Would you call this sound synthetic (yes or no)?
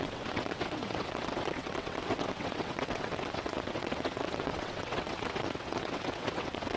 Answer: yes